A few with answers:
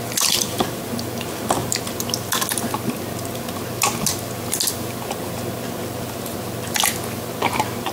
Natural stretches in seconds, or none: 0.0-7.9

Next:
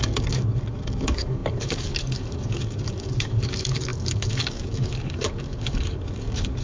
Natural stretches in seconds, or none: none